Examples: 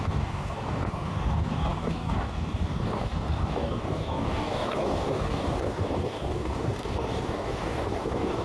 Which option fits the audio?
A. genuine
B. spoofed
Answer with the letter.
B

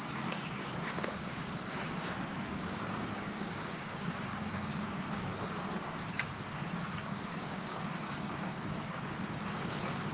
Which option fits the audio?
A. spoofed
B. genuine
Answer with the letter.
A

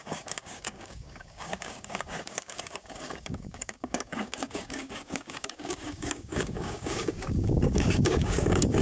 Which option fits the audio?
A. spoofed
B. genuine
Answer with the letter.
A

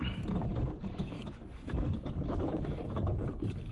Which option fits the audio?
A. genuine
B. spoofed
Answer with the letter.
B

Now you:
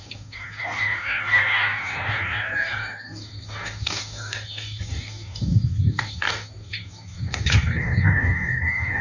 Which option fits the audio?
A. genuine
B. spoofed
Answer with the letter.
B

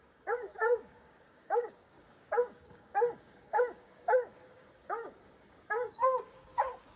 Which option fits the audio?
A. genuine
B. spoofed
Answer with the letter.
B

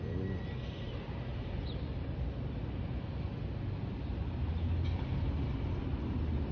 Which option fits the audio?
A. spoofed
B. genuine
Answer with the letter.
B